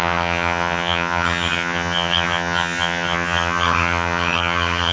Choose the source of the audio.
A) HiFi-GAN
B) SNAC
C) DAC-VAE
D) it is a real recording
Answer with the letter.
A